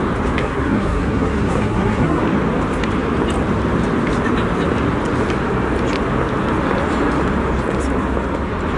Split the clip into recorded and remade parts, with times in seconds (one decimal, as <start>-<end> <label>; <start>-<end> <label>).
0.0-0.4 recorded; 0.4-2.2 remade; 2.2-8.8 recorded